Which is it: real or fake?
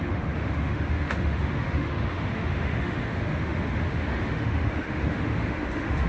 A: fake